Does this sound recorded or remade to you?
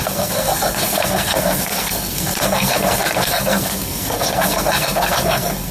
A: remade